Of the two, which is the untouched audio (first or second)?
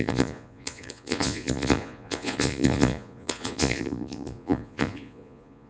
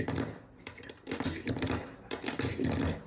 second